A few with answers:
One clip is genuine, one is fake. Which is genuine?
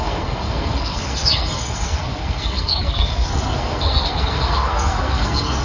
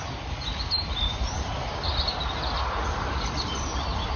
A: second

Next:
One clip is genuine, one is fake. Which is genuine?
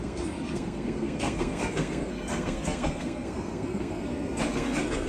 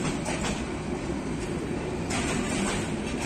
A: second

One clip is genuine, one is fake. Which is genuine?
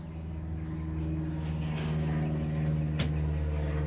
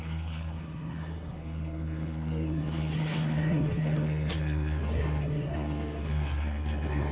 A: first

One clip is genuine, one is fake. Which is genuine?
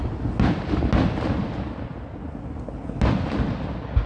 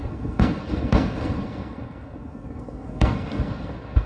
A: first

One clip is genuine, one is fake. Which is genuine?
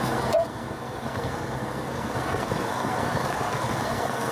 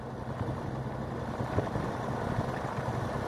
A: second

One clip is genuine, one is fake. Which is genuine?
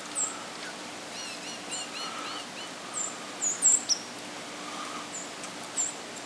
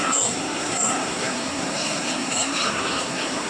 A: first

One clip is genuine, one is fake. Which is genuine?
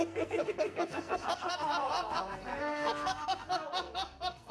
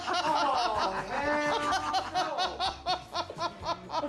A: second